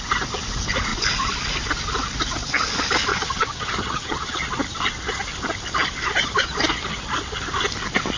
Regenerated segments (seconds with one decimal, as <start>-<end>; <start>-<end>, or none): 3.1-4.4